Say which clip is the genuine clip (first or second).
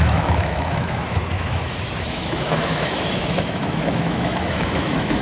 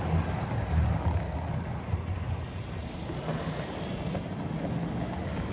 second